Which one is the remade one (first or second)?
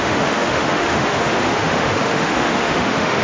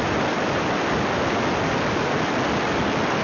first